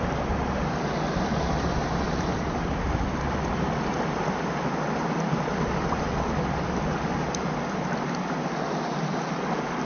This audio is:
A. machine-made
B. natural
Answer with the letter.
B